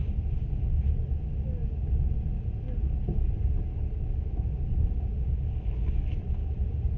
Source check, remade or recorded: recorded